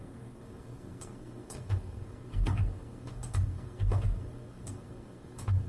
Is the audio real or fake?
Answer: fake